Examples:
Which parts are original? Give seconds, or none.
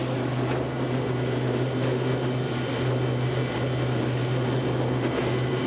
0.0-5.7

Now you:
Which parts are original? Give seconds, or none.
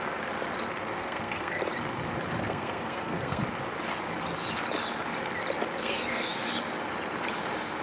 0.0-1.0; 1.6-2.3; 3.4-5.8; 6.4-7.8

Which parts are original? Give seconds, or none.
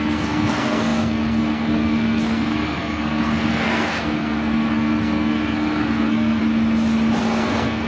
6.4-7.2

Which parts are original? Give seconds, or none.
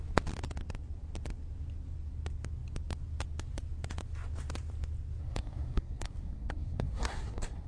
0.0-5.2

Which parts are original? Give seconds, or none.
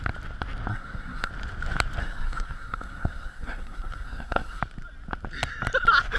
0.0-0.7; 1.3-2.0; 4.6-6.2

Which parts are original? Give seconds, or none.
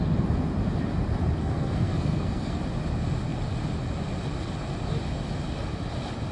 0.0-1.4; 2.6-6.3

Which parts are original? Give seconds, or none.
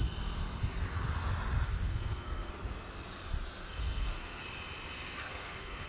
0.0-1.9; 2.5-3.6; 4.4-5.2